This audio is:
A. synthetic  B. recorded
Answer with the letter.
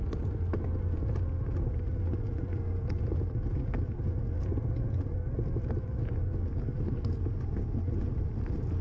B